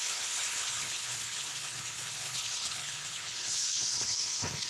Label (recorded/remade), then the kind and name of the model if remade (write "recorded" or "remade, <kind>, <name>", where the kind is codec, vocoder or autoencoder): remade, codec, HILCodec